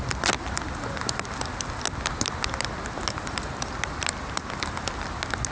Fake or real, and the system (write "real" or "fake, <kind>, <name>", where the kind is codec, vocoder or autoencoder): real